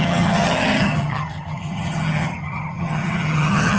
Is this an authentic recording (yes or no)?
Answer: no